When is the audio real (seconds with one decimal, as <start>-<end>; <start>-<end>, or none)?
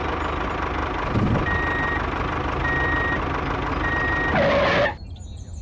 0.0-5.6